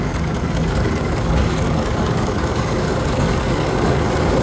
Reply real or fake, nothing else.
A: fake